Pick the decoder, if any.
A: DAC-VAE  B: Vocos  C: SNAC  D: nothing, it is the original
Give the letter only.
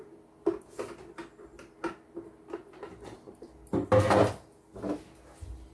D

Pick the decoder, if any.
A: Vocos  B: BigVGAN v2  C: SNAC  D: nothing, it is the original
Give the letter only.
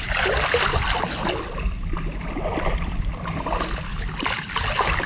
D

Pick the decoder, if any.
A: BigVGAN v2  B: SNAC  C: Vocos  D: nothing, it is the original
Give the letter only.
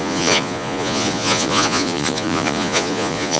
C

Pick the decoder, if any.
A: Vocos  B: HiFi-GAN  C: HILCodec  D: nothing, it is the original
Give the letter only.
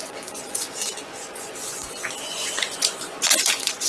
A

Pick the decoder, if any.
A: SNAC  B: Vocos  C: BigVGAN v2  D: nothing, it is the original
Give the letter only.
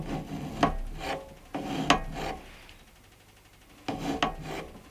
D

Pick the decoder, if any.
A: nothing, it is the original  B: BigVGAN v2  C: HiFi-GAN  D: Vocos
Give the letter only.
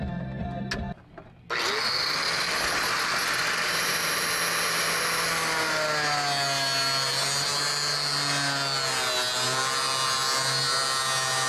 A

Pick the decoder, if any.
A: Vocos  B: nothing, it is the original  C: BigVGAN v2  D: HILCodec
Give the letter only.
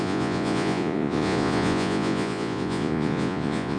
A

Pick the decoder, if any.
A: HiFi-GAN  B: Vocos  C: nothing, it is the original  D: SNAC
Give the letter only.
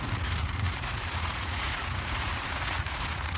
B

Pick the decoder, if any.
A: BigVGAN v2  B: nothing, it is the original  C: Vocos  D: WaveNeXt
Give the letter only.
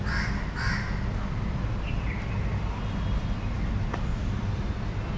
B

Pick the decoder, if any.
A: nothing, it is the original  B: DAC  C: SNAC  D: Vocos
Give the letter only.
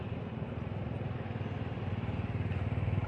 A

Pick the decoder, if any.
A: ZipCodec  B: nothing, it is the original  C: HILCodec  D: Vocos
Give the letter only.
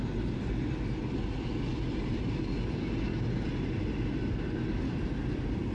B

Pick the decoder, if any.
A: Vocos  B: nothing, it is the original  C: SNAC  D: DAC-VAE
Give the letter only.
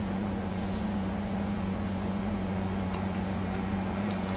A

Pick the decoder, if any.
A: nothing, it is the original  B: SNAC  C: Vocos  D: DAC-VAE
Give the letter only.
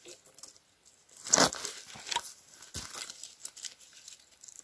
A